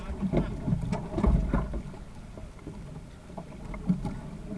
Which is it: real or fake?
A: real